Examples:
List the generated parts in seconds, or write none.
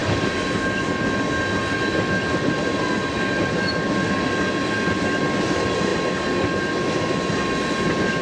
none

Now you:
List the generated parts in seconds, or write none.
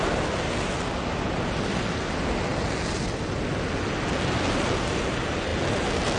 none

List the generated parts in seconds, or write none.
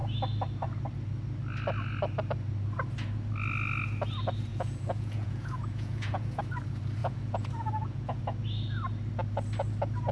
4.5-6.4 (vocoder, Vocos); 7.0-8.2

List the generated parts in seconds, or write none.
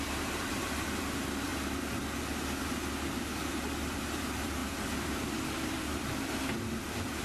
0.0-1.5 (vocoder, BigVGAN v2); 3.8-7.2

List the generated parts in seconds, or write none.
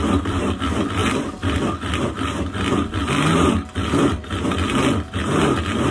1.0-2.1 (vocoder, BigVGAN v2); 3.0-5.2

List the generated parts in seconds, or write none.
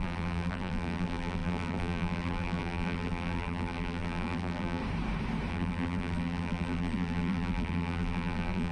0.0-4.8 (vocoder, BigVGAN v2); 5.5-8.7